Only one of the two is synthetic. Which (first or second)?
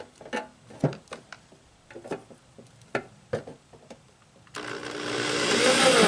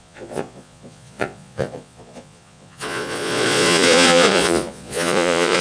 second